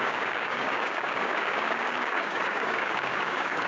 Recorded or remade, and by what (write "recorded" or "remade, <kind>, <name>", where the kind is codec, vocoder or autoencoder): remade, codec, DAC